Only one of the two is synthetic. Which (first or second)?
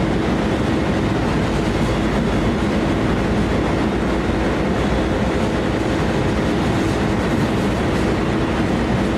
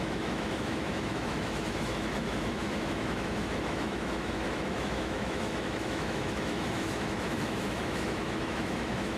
second